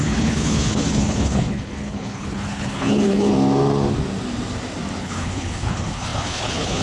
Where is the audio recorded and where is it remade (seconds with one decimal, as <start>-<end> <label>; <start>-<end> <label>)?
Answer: 0.0-3.3 remade; 3.3-5.0 recorded; 5.0-6.8 remade